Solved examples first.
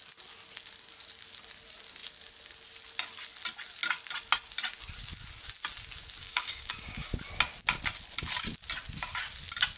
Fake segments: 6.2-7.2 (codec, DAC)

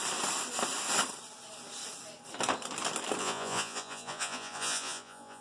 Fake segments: 3.2-5.4 (vocoder, Vocos)

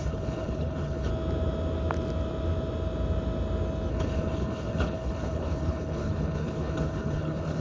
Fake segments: 0.0-1.1 (codec, HILCodec); 3.9-7.6

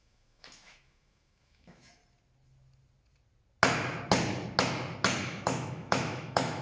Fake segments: 0.0-2.0 (autoencoder, DAC-VAE); 5.2-6.6

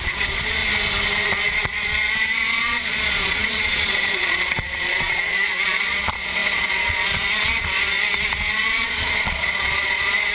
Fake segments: 0.0-0.6 (vocoder, Vocos); 1.3-10.3

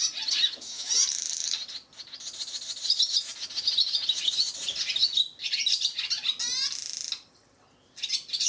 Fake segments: 0.4-0.9 (autoencoder, DAC-VAE)

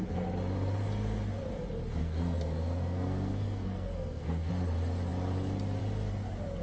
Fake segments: 2.0-4.5 (codec, SNAC)